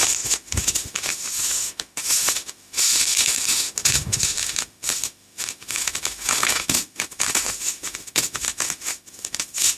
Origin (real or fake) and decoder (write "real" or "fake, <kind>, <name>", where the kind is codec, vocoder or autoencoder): fake, autoencoder, DAC-VAE